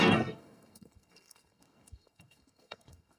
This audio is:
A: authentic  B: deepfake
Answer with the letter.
B